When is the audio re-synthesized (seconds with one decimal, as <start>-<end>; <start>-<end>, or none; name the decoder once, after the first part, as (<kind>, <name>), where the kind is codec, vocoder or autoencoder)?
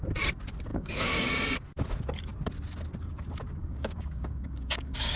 0.7-1.3 (codec, DAC); 3.6-5.2